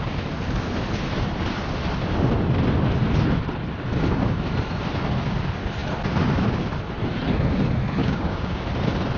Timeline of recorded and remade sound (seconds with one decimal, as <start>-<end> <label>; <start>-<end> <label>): 0.0-8.0 recorded; 8.0-8.6 remade; 8.6-9.2 recorded